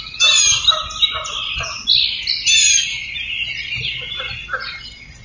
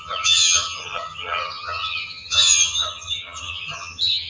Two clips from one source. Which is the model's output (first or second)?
second